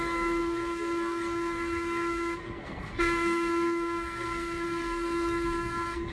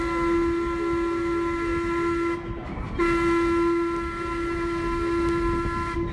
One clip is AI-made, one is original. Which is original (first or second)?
second